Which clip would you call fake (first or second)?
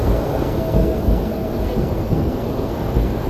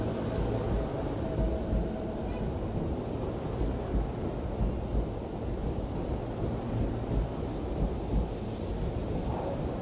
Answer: first